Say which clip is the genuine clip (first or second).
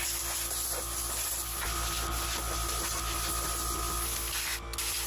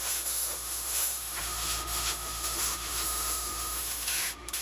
first